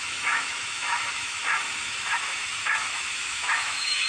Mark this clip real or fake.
fake